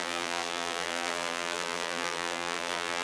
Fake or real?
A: fake